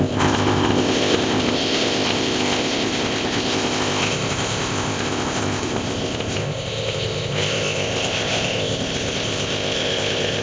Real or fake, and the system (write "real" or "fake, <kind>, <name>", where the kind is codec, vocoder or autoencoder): fake, codec, ZipCodec